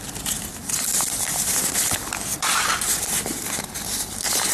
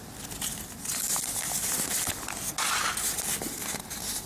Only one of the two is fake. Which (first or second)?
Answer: first